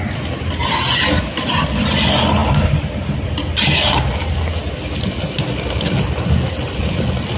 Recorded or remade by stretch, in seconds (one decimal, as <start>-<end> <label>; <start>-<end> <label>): 0.0-7.4 recorded